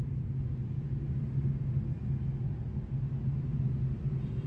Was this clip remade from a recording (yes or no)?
no